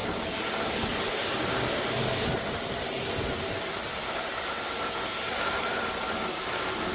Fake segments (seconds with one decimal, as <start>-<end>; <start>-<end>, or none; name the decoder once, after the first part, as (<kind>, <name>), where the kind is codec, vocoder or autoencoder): 0.0-4.3 (vocoder, BigVGAN v2); 6.5-6.9